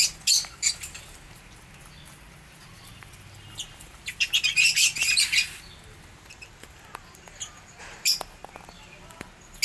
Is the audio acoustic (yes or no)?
yes